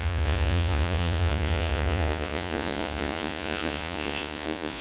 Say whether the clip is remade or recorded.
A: remade